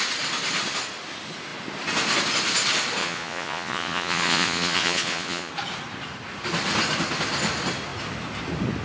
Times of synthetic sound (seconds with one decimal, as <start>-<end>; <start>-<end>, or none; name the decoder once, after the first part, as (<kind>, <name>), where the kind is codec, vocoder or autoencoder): 3.0-5.5 (vocoder, Vocos)